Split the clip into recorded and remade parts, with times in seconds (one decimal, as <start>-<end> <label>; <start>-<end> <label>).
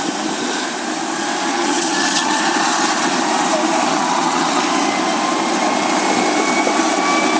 0.0-1.5 recorded; 1.5-2.4 remade; 2.4-3.9 recorded; 3.9-4.6 remade; 4.6-7.4 recorded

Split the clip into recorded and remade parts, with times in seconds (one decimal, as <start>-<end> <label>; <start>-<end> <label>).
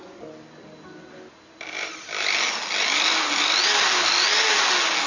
0.0-5.1 recorded